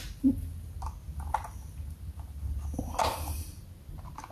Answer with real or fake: real